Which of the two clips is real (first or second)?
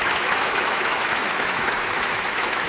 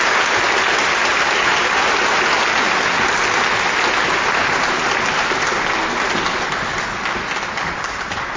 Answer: second